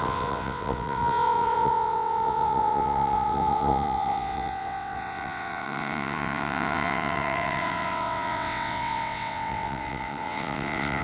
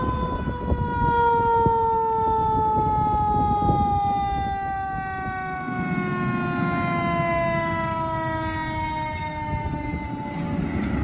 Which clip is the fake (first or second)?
first